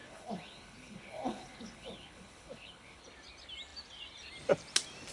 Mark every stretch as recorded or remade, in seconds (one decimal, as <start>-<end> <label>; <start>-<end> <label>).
0.0-3.0 remade; 3.0-5.1 recorded